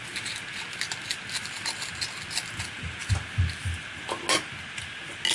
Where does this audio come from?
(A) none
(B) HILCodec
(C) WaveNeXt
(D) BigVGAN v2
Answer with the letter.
A